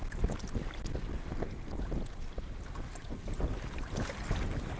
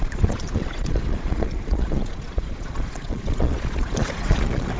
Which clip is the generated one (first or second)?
second